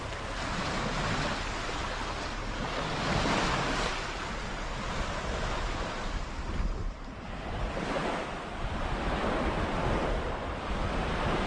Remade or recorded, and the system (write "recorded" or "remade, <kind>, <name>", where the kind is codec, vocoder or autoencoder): recorded